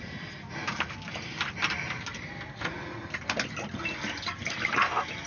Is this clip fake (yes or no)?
no